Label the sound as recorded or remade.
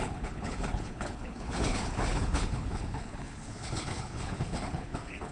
remade